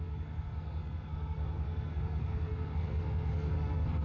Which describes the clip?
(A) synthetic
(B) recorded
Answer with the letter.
A